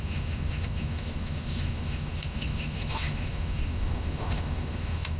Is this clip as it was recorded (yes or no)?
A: no